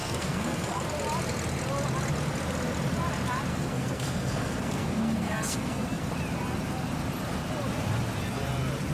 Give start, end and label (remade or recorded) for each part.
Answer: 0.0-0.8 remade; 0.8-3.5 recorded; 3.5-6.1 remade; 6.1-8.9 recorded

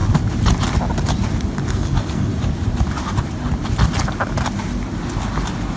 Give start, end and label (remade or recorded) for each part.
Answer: 0.0-1.7 recorded; 1.7-2.3 remade; 2.3-5.8 recorded

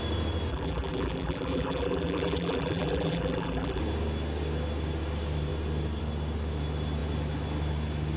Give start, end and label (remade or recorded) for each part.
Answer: 0.0-0.5 recorded; 0.5-3.8 remade; 3.8-8.2 recorded

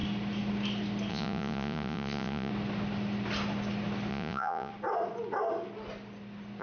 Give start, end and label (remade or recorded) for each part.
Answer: 0.0-1.1 recorded; 1.1-2.5 remade; 2.5-4.1 recorded; 4.1-4.7 remade; 4.7-6.6 recorded